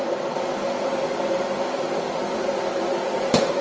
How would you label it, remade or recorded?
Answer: remade